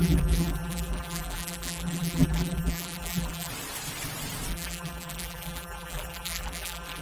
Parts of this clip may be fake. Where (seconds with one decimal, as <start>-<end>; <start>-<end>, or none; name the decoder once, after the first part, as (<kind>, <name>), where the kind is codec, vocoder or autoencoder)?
0.0-3.5 (vocoder, BigVGAN v2); 4.5-7.0